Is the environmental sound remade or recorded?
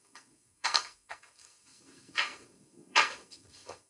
remade